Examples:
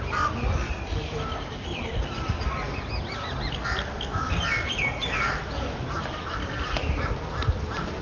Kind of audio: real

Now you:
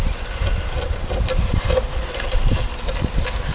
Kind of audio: real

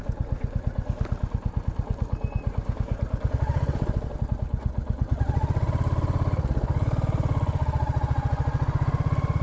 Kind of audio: real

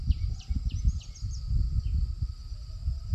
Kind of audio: real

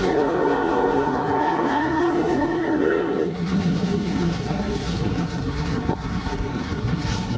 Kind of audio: fake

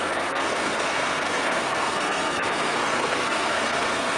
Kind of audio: fake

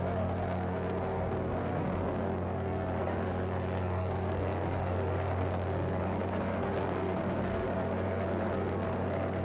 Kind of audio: fake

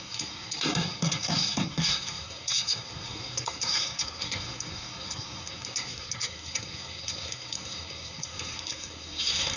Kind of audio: fake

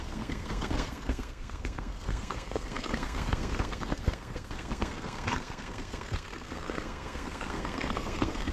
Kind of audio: fake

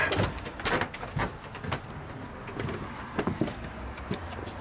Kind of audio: real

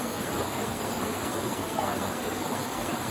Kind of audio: fake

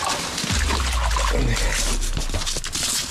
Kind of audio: real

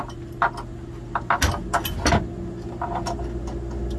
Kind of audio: real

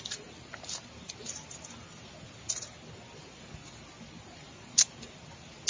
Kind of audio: real